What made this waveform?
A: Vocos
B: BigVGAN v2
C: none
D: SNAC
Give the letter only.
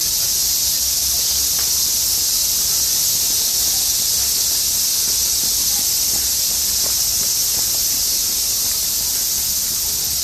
C